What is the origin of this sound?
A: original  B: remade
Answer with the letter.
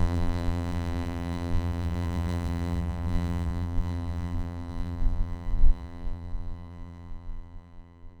B